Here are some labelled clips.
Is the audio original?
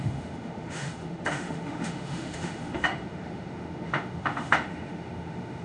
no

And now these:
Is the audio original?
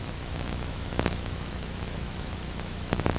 no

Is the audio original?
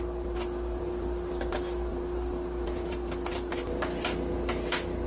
yes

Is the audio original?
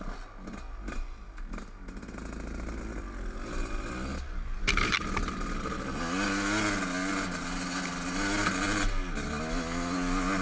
yes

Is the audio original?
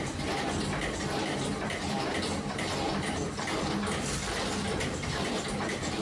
yes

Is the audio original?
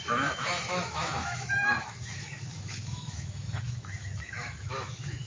no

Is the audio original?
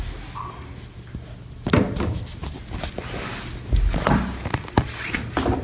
yes